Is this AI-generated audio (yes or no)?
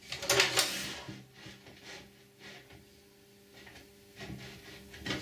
no